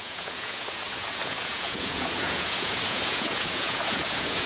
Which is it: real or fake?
fake